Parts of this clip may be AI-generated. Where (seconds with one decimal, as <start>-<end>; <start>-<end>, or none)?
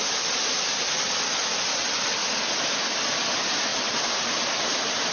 none